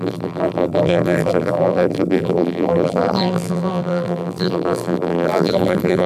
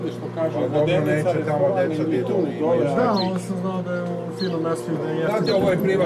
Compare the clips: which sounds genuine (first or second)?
second